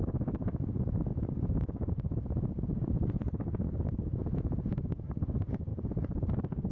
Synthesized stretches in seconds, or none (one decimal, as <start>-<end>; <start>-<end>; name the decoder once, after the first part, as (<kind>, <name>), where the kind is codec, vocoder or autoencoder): 1.1-1.9 (vocoder, BigVGAN v2); 4.2-5.1; 5.7-6.3